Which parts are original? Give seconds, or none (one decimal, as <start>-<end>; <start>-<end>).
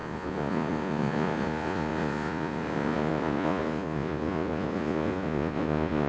none